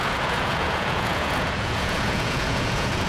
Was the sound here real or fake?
fake